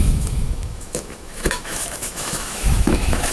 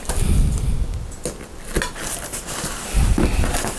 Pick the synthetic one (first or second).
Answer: first